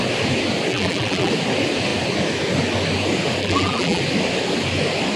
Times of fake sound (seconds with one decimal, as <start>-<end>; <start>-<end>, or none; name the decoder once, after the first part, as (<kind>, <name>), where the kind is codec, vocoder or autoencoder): 0.7-1.3 (vocoder, BigVGAN v2); 3.4-4.0

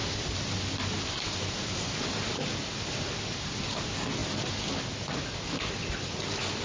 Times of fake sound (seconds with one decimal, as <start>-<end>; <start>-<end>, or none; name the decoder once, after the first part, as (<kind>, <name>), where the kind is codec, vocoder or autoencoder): none

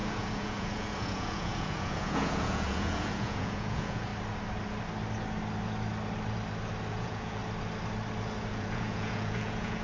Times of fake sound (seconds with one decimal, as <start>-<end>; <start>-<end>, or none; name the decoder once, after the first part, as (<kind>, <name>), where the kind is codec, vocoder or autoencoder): 0.0-4.1 (vocoder, Vocos); 6.9-7.4; 8.5-9.8

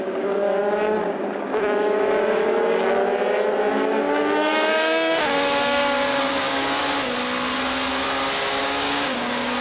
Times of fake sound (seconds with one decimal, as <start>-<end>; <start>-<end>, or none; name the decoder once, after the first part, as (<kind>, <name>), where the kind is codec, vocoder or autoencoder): 0.0-3.0 (codec, DAC); 3.7-6.8; 8.6-9.6